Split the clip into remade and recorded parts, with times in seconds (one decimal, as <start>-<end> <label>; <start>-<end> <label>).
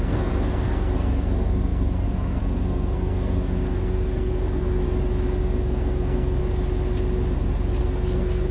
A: 0.0-4.8 remade; 4.8-5.4 recorded; 5.4-6.4 remade; 6.4-7.8 recorded; 7.8-8.5 remade